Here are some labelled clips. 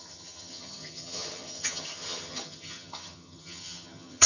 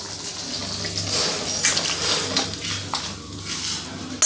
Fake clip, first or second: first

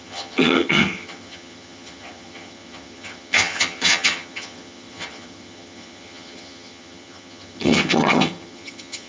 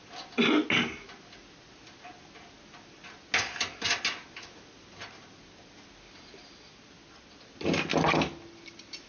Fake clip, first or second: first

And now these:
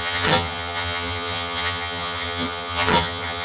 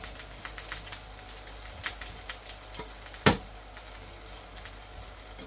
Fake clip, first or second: first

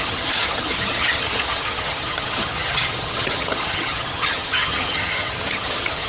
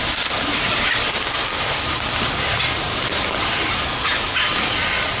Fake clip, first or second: first